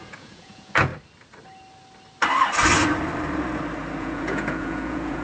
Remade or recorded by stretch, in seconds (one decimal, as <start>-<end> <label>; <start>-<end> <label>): 0.0-0.9 remade; 0.9-4.0 recorded; 4.0-5.2 remade